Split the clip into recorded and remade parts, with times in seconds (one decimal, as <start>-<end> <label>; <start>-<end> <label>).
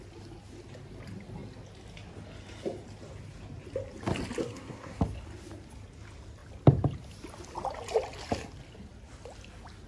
0.0-4.4 recorded; 4.4-5.0 remade; 5.0-9.9 recorded